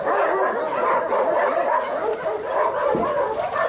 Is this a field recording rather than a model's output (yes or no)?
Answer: yes